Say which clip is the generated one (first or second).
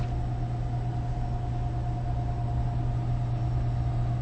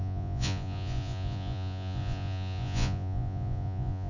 second